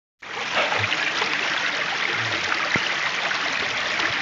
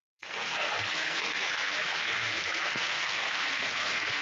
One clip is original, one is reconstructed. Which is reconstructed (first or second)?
second